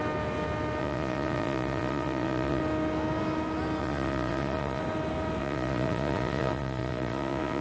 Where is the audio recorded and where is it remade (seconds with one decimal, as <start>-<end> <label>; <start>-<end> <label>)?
0.0-0.8 recorded; 0.8-2.6 remade; 2.6-3.8 recorded; 3.8-4.8 remade; 4.8-5.4 recorded; 5.4-7.6 remade